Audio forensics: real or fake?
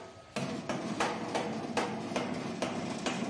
real